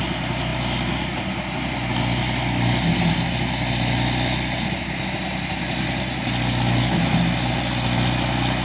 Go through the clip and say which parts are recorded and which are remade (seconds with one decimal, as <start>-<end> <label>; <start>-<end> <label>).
0.0-8.6 recorded